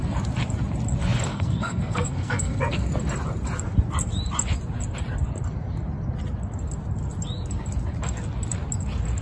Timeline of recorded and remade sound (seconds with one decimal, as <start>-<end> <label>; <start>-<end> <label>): 0.0-1.3 recorded; 1.3-2.9 remade; 2.9-9.2 recorded